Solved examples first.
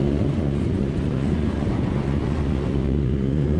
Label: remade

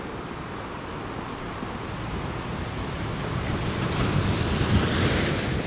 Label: recorded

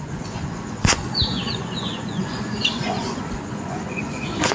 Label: remade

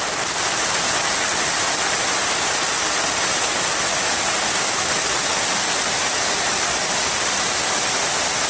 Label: recorded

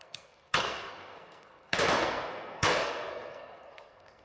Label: remade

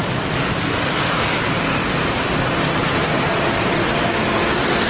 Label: recorded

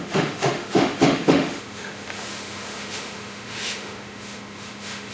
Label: remade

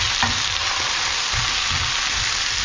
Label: remade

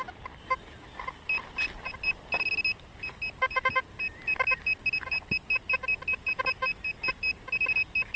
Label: recorded